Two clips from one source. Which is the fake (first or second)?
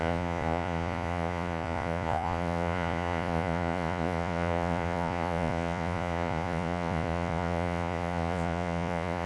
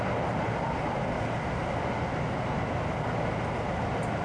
first